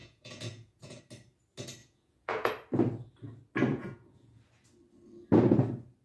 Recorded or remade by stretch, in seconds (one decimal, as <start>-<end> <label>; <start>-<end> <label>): 0.0-1.0 remade; 1.0-1.8 recorded; 1.8-2.5 remade; 2.5-3.7 recorded; 3.7-4.4 remade; 4.4-6.0 recorded